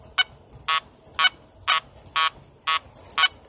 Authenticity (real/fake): real